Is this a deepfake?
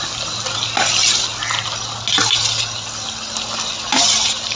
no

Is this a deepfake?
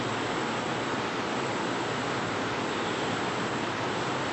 no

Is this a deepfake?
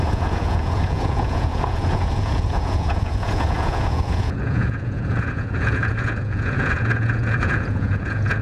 yes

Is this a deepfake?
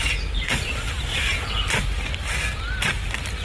no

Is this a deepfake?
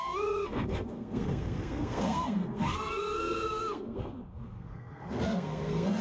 yes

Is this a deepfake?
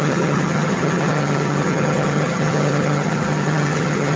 yes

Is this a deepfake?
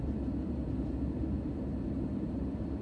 yes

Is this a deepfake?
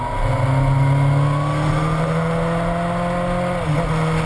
no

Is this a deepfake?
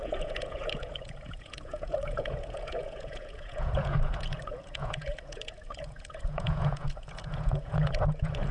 yes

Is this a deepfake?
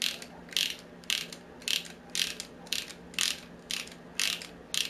no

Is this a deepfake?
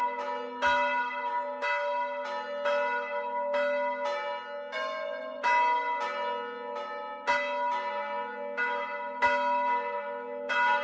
no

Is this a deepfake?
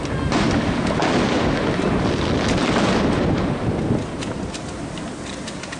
no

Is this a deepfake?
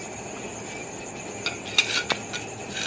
no